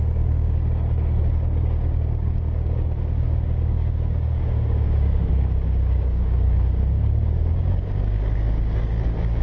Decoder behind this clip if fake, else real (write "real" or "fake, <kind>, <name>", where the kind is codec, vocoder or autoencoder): fake, codec, DAC